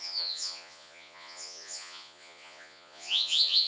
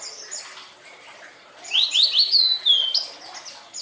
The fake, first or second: first